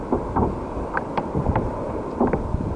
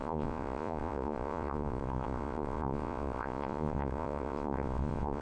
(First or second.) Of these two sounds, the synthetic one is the second